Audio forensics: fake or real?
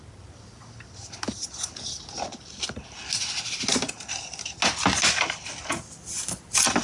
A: real